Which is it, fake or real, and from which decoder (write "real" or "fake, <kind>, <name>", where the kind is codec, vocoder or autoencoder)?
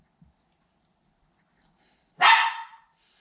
real